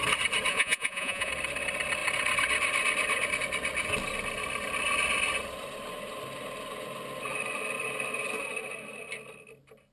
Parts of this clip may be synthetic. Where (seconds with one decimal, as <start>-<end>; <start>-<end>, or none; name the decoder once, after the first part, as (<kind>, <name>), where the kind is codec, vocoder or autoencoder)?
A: 0.5-1.3 (vocoder, Vocos)